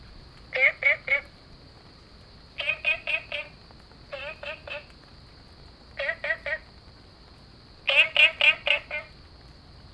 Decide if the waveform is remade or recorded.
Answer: recorded